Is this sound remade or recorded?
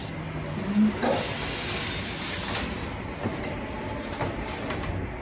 recorded